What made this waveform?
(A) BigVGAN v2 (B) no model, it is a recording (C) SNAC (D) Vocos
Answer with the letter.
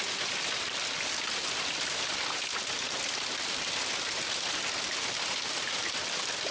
B